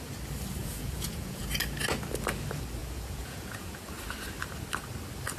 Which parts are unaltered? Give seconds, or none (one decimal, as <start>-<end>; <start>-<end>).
0.0-0.6; 1.5-2.8; 3.9-5.4

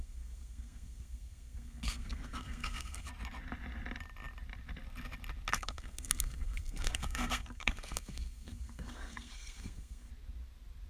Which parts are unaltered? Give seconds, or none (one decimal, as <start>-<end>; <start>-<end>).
3.1-5.5; 10.1-10.9

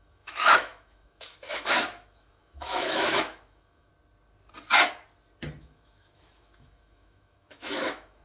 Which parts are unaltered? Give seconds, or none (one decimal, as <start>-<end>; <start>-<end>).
3.9-5.6

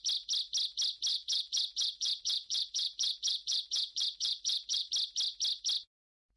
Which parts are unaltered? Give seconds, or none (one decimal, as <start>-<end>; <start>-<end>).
0.0-1.1; 4.9-6.4

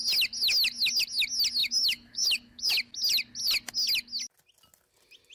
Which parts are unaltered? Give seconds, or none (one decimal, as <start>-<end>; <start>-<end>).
0.0-1.6; 2.7-5.3

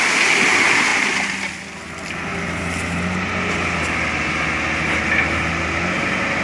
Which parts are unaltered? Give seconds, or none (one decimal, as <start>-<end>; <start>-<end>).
0.0-6.4

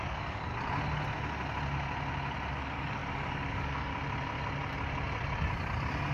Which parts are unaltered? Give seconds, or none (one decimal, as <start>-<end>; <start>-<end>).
0.5-2.5; 3.9-6.1